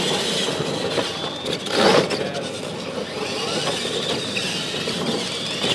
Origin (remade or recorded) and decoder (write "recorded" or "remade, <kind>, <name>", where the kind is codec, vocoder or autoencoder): recorded